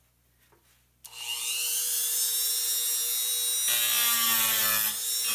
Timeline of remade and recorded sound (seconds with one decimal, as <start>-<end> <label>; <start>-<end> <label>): 0.0-5.3 recorded